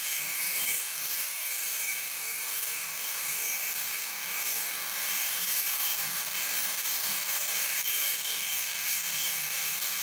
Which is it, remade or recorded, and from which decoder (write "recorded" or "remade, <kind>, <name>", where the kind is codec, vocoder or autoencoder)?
remade, codec, DAC